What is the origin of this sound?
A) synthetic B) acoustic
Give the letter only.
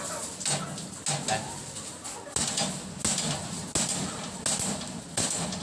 B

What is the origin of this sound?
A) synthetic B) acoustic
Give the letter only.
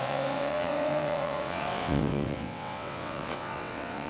A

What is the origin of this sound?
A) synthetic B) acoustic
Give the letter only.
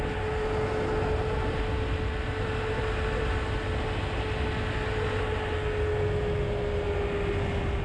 B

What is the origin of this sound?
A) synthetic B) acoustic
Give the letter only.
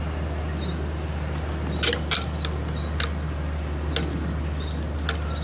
B